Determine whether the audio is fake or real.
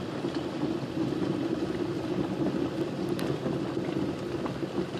real